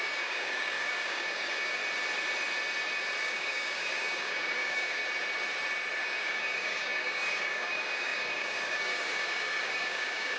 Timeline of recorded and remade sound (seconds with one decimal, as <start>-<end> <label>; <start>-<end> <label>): 0.0-1.8 remade; 1.8-3.2 recorded; 3.2-5.0 remade; 5.0-6.0 recorded; 6.0-10.4 remade